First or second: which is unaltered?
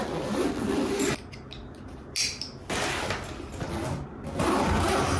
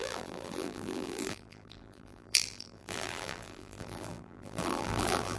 first